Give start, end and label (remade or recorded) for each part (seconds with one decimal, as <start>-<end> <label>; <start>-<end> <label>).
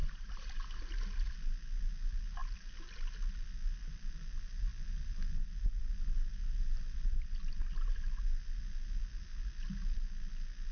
0.0-0.5 remade; 0.5-10.7 recorded